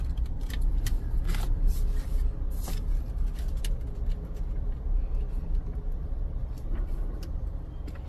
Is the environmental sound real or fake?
fake